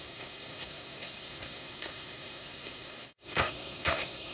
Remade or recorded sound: remade